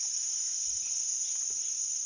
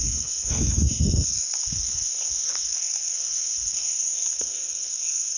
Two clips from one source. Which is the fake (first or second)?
second